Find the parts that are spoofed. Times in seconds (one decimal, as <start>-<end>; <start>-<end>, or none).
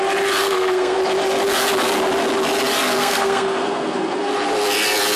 0.4-1.0; 3.0-4.3